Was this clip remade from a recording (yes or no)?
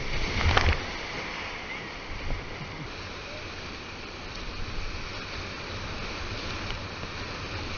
no